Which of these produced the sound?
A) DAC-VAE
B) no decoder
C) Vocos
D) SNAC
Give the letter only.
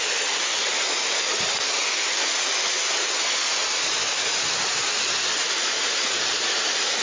B